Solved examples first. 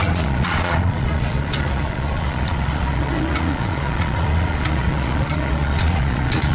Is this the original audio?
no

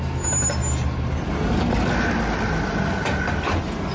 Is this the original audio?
yes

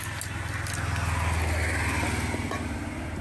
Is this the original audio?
yes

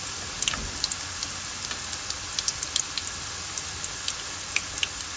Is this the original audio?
yes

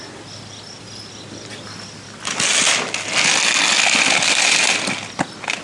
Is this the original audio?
yes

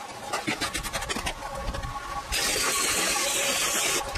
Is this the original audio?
yes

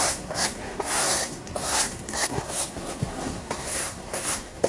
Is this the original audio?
no